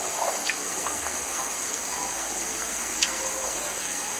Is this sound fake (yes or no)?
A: yes